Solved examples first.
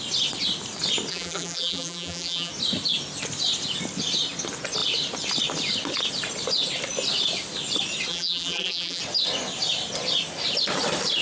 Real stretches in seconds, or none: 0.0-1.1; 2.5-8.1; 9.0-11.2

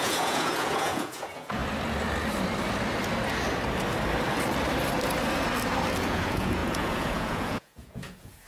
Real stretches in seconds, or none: 1.6-6.1

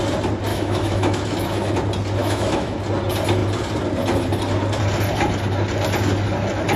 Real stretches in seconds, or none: 0.0-0.5; 1.7-2.2; 2.8-6.8

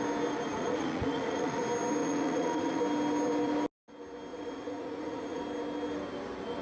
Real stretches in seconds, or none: 0.0-0.5; 1.6-2.0; 2.8-4.3; 5.4-6.6

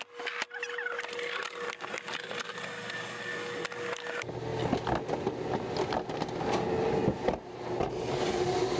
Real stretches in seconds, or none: 0.0-8.8

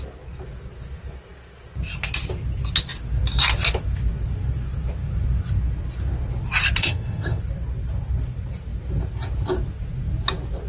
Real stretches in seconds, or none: 0.0-6.8; 7.4-10.7